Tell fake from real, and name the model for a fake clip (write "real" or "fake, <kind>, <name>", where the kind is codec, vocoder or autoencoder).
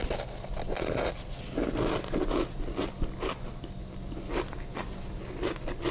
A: real